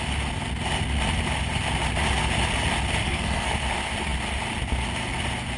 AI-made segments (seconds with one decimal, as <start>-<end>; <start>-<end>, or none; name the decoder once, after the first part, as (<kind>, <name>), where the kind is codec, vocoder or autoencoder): 3.0-3.5 (codec, SNAC)

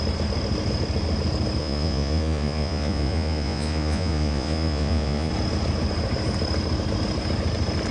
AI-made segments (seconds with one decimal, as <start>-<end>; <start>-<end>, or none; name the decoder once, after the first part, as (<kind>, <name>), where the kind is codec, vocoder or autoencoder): 1.6-5.3 (vocoder, Vocos)

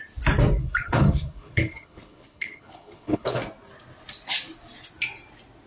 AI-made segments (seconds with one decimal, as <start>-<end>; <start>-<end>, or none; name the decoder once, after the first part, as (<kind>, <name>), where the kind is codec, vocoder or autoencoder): 0.6-3.4 (codec, HILCodec)

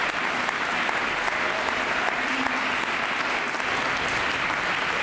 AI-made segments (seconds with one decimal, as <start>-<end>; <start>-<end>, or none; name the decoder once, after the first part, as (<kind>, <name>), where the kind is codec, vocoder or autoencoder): none

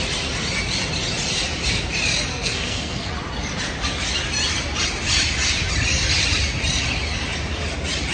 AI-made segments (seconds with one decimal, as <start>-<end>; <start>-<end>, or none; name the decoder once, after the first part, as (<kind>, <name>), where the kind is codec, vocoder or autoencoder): 2.3-3.1 (codec, SNAC)

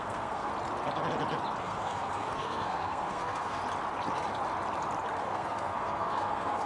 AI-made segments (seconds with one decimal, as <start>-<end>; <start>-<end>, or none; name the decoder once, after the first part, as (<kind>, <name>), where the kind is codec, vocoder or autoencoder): 0.0-0.5 (codec, SNAC); 1.6-3.6; 5.2-6.7

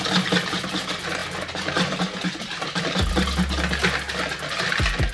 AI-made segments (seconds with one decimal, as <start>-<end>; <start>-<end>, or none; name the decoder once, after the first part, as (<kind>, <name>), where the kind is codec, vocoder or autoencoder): none